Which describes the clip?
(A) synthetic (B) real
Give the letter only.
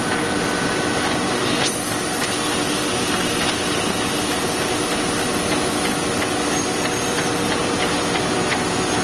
B